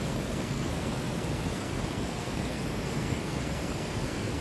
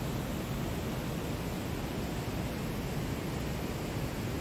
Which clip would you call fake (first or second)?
first